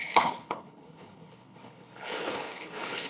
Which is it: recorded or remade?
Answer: remade